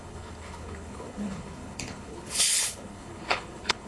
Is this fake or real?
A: fake